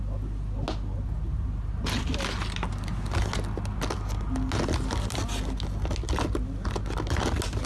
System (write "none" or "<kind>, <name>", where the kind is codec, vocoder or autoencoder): none